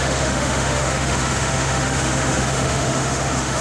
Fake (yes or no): yes